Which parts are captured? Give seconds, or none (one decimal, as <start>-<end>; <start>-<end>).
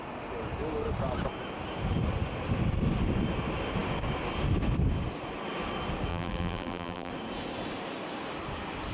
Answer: 0.0-6.1; 7.1-8.9